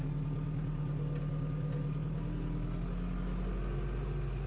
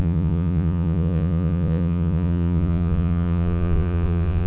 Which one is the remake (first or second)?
second